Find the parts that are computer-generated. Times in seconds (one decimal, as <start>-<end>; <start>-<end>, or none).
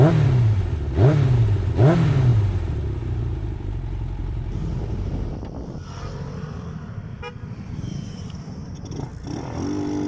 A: 2.3-3.7; 4.2-5.1